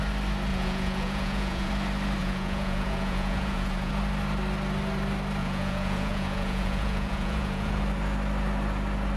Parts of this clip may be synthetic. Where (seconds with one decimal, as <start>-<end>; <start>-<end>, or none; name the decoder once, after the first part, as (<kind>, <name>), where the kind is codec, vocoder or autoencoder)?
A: 0.5-1.7 (vocoder, Vocos); 2.2-3.9; 5.4-7.8